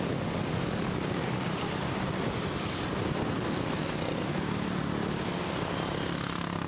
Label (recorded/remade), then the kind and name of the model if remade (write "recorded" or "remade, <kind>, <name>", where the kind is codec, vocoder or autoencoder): recorded